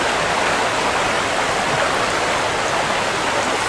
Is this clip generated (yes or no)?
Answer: no